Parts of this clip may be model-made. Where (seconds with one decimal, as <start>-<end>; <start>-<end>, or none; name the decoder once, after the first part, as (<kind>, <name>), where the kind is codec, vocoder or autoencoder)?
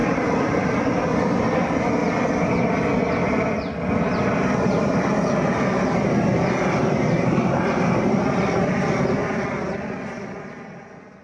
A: 0.0-0.8 (vocoder, BigVGAN v2); 6.8-8.7